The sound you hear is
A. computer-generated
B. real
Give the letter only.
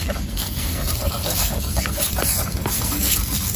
A